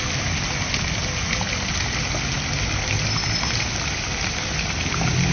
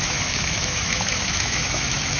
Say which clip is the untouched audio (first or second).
first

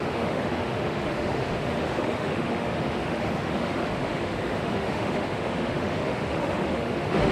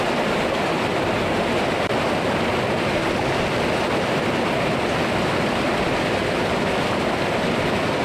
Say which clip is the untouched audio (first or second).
second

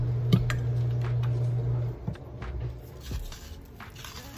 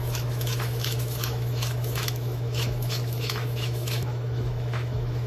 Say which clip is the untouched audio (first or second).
first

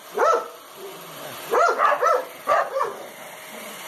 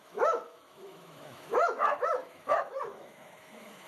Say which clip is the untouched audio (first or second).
first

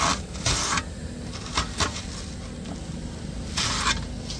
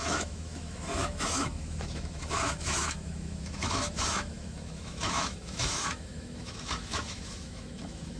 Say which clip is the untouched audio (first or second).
first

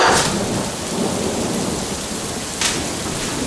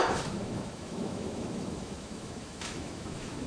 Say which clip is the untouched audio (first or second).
first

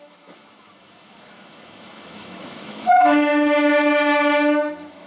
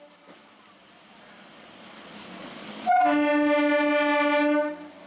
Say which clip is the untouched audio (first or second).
second